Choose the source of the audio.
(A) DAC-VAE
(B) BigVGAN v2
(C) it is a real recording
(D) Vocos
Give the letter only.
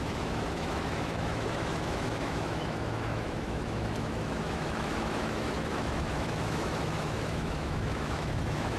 A